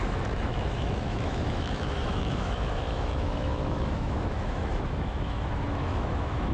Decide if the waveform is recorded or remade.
remade